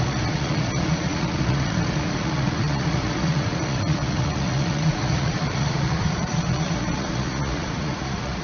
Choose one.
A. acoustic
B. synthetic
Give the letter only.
B